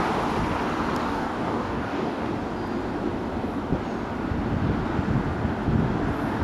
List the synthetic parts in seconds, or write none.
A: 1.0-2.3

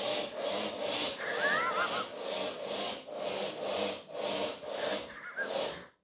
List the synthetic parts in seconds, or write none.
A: none

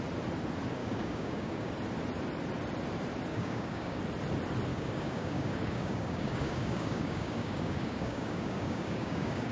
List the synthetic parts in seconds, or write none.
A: 0.8-1.7; 3.3-4.0; 4.7-9.5

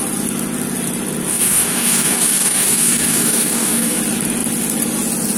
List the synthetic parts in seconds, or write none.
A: 1.3-4.0

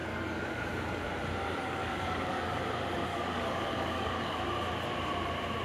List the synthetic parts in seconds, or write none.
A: 0.0-1.0; 1.6-2.6; 3.1-4.4

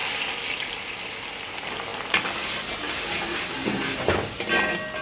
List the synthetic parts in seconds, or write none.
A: none

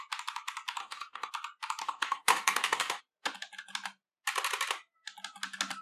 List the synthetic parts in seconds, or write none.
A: 0.8-1.3; 1.8-3.0

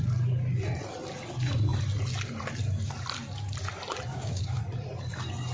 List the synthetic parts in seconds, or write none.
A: 4.1-4.6